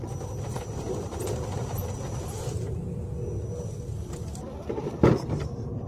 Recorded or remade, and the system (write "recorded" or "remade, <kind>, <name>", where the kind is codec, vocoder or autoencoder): recorded